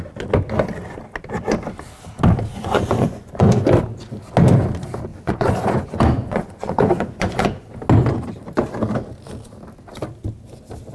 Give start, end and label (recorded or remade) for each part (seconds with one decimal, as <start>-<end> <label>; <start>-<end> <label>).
0.0-2.5 recorded; 2.5-3.6 remade; 3.6-5.1 recorded; 5.1-7.7 remade; 7.7-10.9 recorded